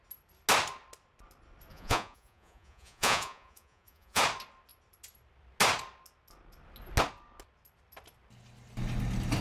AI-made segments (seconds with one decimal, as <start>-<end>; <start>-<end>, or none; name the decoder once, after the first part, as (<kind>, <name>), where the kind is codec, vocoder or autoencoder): 1.7-4.2 (vocoder, Vocos)